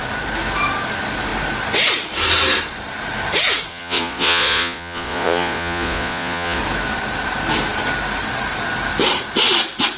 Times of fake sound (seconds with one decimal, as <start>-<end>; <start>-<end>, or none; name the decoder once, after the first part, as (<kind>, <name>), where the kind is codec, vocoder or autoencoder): 3.7-6.6 (vocoder, Vocos)